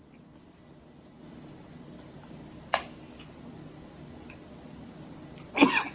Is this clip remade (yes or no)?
no